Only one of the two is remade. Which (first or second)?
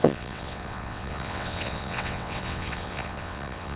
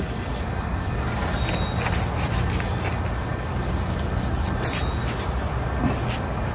first